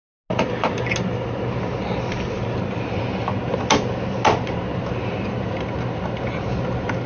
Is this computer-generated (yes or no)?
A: no